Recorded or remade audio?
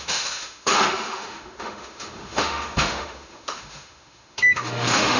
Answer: remade